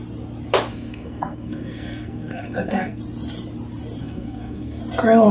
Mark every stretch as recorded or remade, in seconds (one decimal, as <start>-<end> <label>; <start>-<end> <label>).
0.0-0.7 recorded; 0.7-3.0 remade; 3.0-4.0 recorded; 4.0-4.8 remade; 4.8-5.3 recorded